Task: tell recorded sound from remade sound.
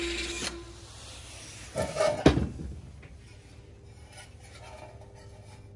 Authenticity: recorded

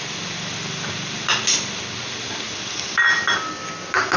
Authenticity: recorded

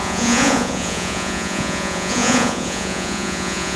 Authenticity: remade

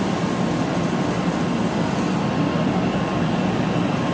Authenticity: recorded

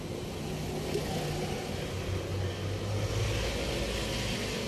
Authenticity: recorded